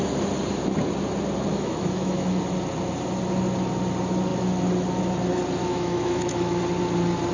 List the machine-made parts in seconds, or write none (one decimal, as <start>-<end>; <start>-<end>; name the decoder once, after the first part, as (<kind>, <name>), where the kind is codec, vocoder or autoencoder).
1.5-2.4 (autoencoder, DAC-VAE); 5.6-6.6